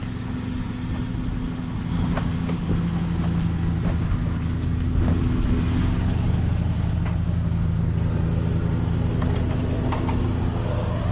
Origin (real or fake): real